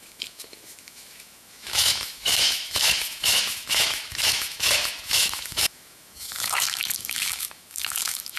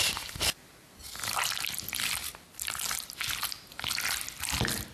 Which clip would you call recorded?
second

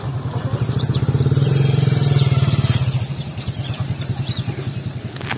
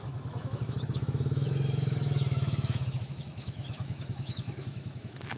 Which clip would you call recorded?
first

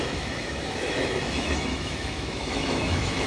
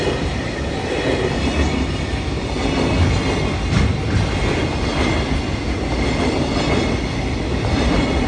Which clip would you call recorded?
second